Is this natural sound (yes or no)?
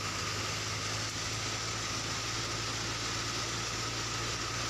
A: yes